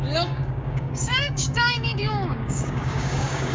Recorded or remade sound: remade